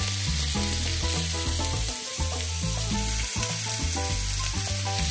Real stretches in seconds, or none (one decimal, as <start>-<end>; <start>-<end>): 0.0-5.1